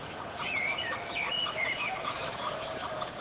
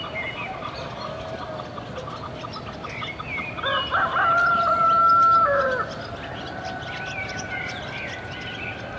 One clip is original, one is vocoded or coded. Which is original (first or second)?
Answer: second